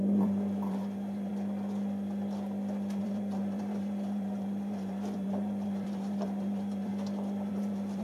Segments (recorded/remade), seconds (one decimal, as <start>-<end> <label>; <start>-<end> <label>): 0.0-1.3 remade; 1.3-3.0 recorded; 3.0-6.9 remade; 6.9-7.5 recorded; 7.5-8.0 remade